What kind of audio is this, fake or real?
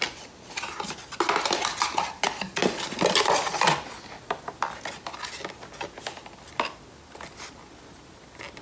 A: real